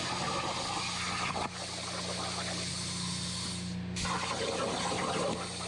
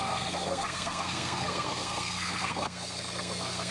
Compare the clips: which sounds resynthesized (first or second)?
second